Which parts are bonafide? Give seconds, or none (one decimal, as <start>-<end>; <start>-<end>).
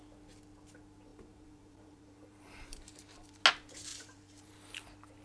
0.0-1.1; 3.4-3.9; 4.5-5.2